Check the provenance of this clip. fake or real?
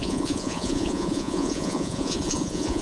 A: fake